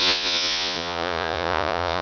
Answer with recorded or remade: remade